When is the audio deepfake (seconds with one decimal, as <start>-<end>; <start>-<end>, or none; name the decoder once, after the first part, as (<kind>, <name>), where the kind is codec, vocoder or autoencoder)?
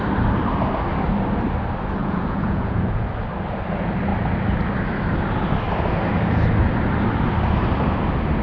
2.0-3.0 (vocoder, Vocos)